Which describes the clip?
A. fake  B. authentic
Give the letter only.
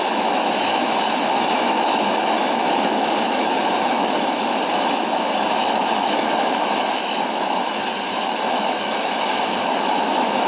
A